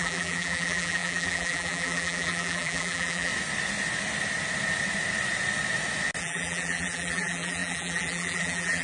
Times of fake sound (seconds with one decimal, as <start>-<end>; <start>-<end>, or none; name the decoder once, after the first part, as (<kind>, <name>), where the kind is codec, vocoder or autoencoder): 0.0-3.3 (vocoder, BigVGAN v2); 6.2-8.8

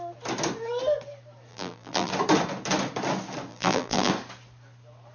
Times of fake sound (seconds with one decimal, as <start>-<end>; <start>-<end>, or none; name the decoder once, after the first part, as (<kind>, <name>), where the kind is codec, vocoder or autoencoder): 1.5-2.1 (vocoder, BigVGAN v2); 3.5-4.1

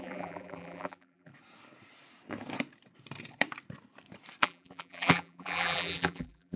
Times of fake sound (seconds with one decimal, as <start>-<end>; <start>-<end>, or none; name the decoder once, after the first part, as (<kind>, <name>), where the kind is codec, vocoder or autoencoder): 0.0-1.3 (vocoder, BigVGAN v2); 4.4-6.6

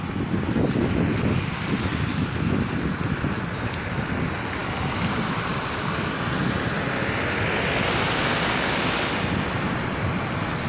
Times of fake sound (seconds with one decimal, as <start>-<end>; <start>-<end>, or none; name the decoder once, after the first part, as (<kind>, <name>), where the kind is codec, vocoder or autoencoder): 4.6-6.9 (vocoder, BigVGAN v2)

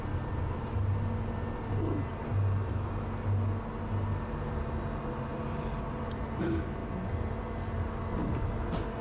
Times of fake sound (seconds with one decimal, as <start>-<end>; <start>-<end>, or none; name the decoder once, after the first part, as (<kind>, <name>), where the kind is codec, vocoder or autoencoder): 5.3-6.3 (vocoder, BigVGAN v2)

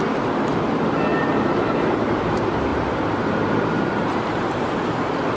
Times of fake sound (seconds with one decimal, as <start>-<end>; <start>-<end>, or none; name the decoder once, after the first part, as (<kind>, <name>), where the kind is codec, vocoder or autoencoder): 1.1-1.7 (vocoder, BigVGAN v2); 2.7-4.7

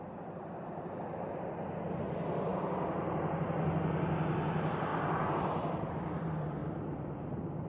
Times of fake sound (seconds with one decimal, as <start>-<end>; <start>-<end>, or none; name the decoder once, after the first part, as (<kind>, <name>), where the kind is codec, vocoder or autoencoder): 4.9-5.9 (vocoder, BigVGAN v2); 6.6-7.7